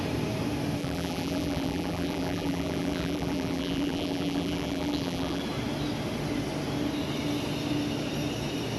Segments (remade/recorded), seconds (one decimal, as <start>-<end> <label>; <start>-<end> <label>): 0.0-0.8 recorded; 0.8-5.4 remade; 5.4-8.8 recorded